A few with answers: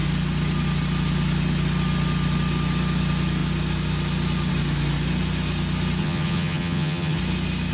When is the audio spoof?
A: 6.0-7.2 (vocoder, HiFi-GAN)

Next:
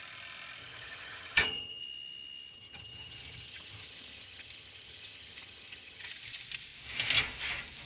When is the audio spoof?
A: 0.6-1.8 (vocoder, HiFi-GAN); 2.5-6.1

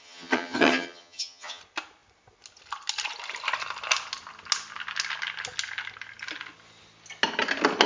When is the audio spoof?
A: 0.0-1.6 (vocoder, HiFi-GAN)

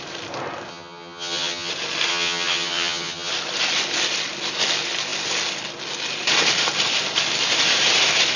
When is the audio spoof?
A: 0.7-1.7 (vocoder, HiFi-GAN); 2.1-3.3